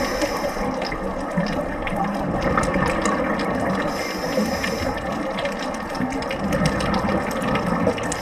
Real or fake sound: real